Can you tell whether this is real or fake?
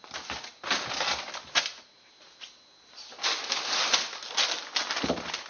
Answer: real